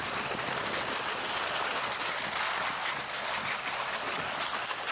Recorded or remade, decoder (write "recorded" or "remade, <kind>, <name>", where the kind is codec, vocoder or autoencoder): recorded